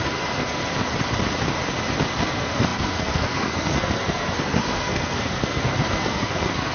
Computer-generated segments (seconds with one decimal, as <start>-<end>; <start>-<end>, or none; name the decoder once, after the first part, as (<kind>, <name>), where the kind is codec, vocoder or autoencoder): 0.0-0.6 (codec, SNAC); 2.2-6.7